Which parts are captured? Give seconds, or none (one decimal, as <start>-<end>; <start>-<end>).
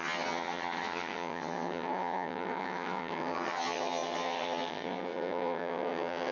none